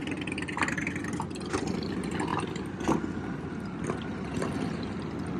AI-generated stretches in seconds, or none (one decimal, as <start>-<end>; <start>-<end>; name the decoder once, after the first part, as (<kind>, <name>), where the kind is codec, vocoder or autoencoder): none